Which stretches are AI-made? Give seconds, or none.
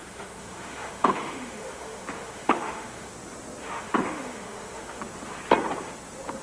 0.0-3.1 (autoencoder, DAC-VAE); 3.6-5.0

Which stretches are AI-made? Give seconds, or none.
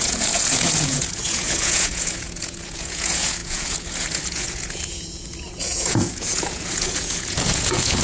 0.0-8.0 (vocoder, Vocos)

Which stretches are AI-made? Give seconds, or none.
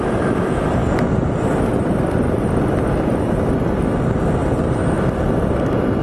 0.0-0.8 (vocoder, BigVGAN v2); 4.4-6.0